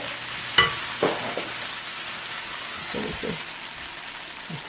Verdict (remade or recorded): recorded